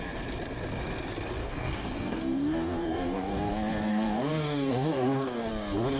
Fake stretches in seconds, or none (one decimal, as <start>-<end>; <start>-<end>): 1.4-3.5; 3.9-5.5